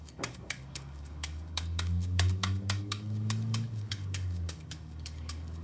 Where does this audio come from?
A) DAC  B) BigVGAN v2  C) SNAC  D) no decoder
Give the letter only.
A